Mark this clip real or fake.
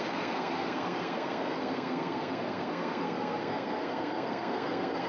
fake